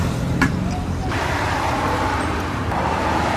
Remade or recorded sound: remade